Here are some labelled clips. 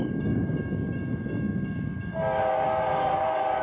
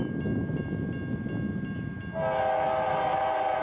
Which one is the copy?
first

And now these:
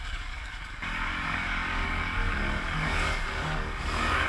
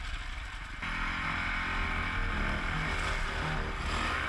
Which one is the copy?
first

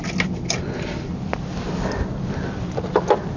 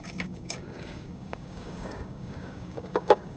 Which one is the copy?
second